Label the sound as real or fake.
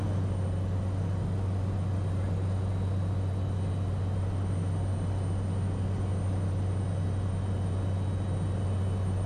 real